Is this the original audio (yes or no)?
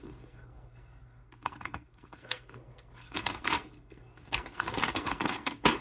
no